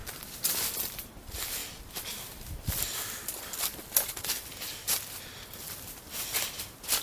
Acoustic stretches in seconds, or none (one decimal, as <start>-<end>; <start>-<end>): 0.0-7.0